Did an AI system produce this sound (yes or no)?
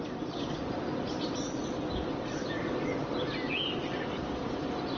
no